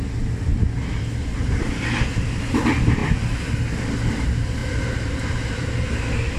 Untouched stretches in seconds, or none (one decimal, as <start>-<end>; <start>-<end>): 0.0-6.4